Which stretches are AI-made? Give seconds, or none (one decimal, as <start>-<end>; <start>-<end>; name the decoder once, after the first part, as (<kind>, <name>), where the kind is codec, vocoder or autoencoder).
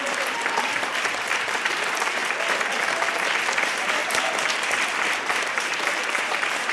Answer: 0.0-2.2 (vocoder, BigVGAN v2); 3.3-4.0; 5.3-6.7